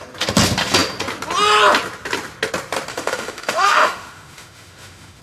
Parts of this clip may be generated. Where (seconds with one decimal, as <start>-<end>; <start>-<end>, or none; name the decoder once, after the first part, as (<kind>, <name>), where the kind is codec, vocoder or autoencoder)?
2.9-5.2 (autoencoder, DAC-VAE)